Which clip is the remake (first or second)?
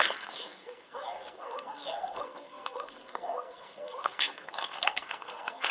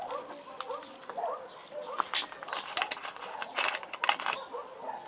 first